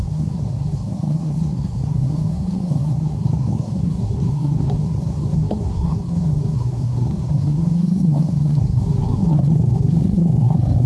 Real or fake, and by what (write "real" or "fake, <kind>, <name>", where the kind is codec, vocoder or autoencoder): fake, codec, SNAC